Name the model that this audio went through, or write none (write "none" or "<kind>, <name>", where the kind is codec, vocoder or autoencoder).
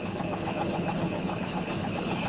codec, HILCodec